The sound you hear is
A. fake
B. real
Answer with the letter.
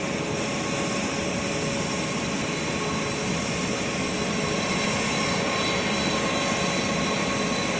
A